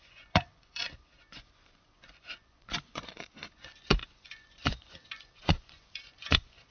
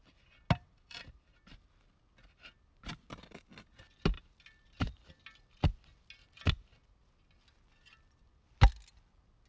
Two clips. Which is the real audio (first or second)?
second